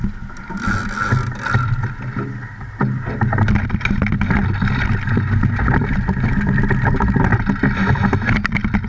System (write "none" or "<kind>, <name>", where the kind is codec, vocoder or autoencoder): none